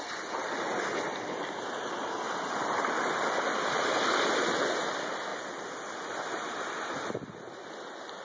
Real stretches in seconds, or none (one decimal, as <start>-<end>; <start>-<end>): 0.0-8.2